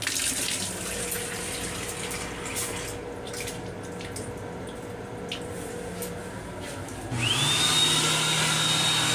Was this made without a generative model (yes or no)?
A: yes